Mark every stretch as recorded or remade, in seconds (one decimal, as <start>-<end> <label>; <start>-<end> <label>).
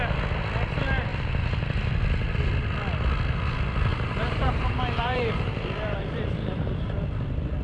0.0-1.1 recorded; 1.1-1.9 remade; 1.9-3.9 recorded; 3.9-7.0 remade; 7.0-7.6 recorded